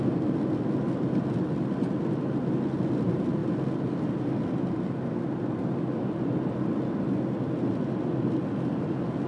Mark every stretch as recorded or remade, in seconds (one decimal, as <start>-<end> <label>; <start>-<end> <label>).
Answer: 0.0-9.3 recorded